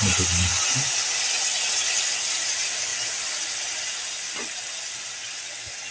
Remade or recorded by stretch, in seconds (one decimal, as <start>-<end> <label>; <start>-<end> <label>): 0.0-5.9 recorded